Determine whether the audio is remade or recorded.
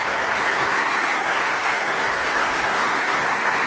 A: remade